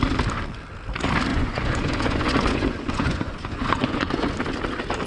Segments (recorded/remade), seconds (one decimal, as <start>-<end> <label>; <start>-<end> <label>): 0.0-1.3 recorded; 1.3-4.3 remade; 4.3-5.1 recorded